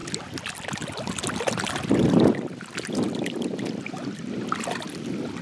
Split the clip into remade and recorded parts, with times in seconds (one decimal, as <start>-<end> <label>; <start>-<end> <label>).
0.0-5.4 recorded